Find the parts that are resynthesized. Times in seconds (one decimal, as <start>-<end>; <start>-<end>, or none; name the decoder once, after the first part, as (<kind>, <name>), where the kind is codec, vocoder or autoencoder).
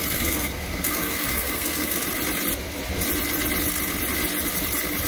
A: 0.0-2.0 (codec, SNAC)